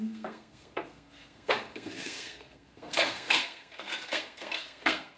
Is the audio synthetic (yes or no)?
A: yes